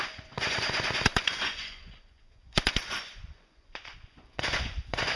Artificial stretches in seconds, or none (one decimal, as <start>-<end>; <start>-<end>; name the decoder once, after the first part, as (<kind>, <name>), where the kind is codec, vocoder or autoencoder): 0.0-5.2 (vocoder, Vocos)